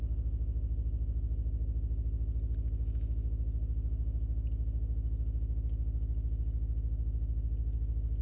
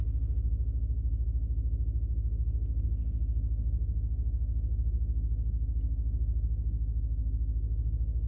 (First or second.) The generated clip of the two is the second